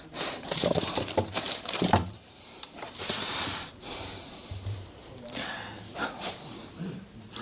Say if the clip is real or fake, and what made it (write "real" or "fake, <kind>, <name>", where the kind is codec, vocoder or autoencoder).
fake, vocoder, BigVGAN v2